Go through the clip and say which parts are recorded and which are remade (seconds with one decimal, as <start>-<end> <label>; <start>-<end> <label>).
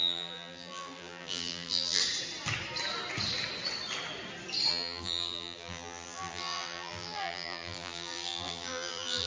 0.0-2.0 remade; 2.0-4.7 recorded; 4.7-9.3 remade